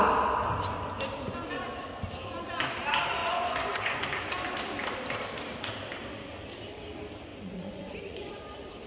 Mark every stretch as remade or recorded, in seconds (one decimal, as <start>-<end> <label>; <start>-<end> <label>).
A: 0.0-3.2 recorded; 3.2-4.0 remade; 4.0-7.3 recorded; 7.3-8.3 remade; 8.3-8.9 recorded